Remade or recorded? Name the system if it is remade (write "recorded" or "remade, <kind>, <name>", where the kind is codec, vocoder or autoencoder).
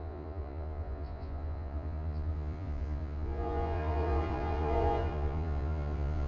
remade, vocoder, Vocos